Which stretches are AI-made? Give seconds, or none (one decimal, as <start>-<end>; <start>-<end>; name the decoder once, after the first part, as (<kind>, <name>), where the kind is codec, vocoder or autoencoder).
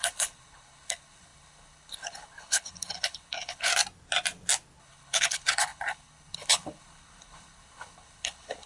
0.0-3.7 (codec, HILCodec); 4.8-8.7